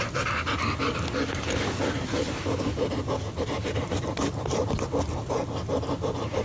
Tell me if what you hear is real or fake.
real